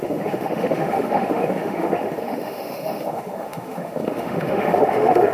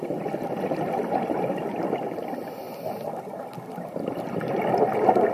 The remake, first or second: first